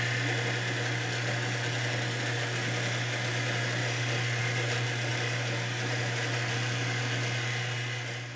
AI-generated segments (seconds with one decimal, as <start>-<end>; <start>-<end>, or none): none